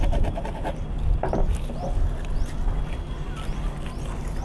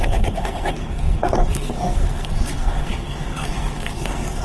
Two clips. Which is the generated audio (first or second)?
second